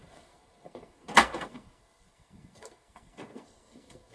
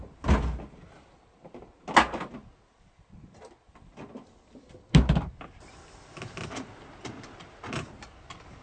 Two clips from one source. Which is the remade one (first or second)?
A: first